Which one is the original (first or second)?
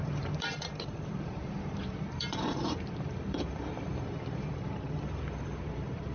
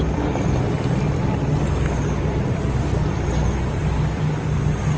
second